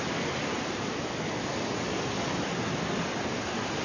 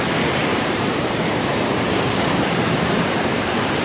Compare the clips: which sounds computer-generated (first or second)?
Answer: second